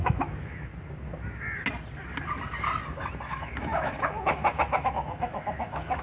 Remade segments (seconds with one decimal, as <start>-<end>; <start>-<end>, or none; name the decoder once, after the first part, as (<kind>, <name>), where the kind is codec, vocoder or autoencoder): 0.0-0.7 (autoencoder, DAC-VAE); 3.3-6.0